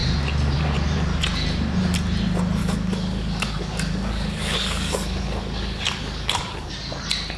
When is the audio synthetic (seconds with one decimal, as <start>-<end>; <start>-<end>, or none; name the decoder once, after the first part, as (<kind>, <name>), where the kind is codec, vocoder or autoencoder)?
2.6-6.7 (codec, DAC)

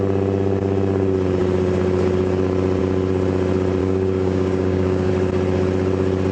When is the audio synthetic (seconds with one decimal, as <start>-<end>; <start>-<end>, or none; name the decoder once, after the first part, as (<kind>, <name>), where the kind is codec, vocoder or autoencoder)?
3.8-5.1 (codec, DAC)